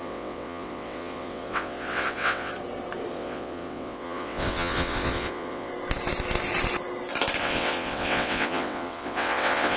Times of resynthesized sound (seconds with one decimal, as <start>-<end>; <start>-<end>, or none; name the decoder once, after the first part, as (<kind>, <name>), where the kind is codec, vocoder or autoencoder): 0.0-2.5 (vocoder, WaveNeXt); 3.1-5.7; 7.4-9.8